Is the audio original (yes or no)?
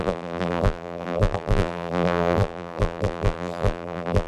no